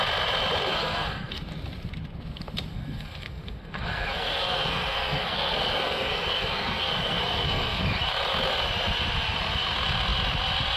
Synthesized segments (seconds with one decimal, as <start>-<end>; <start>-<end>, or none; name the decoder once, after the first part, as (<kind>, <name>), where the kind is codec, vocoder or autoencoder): 0.7-1.4 (codec, SNAC); 2.7-7.8